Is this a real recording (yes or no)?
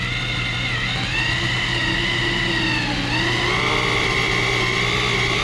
yes